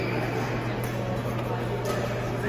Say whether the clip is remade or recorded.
recorded